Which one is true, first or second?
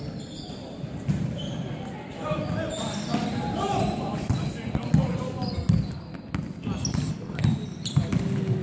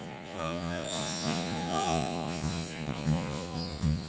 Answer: first